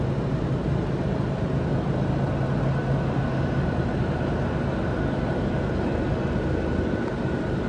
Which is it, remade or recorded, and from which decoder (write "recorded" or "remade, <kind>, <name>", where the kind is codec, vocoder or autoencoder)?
recorded